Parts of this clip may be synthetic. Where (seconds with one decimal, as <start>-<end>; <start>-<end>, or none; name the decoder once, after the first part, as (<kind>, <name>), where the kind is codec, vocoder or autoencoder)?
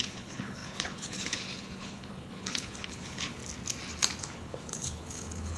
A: 0.0-3.4 (codec, HILCodec); 4.2-5.6